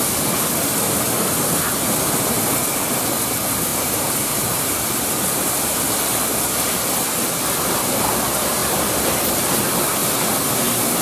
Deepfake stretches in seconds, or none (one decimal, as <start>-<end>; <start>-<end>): 3.7-5.1